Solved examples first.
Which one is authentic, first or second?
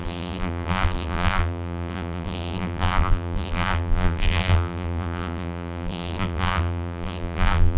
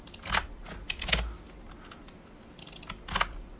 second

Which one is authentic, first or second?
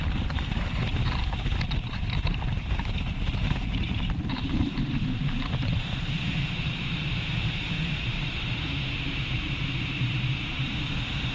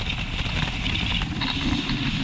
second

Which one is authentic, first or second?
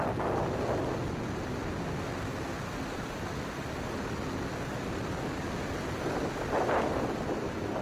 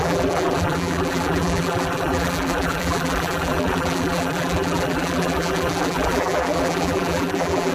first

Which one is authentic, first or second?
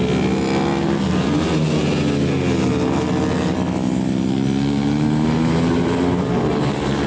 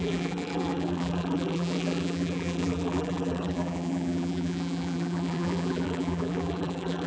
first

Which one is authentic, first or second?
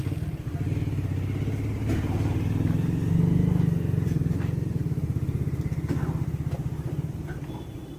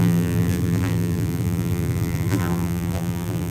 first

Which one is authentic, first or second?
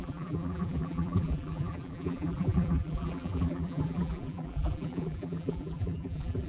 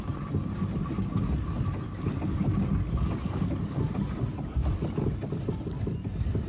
second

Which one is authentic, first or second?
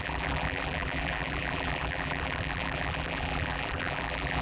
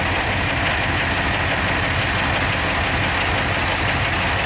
second